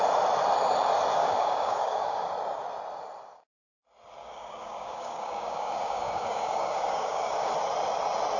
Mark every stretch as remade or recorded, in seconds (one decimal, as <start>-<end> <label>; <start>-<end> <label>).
0.0-1.2 recorded; 1.2-2.3 remade; 2.3-4.2 recorded; 4.2-7.5 remade; 7.5-8.4 recorded